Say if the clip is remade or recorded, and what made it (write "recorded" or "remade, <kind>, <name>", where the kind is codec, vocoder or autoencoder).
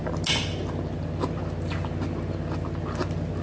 recorded